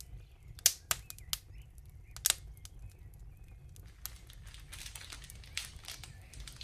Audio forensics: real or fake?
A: real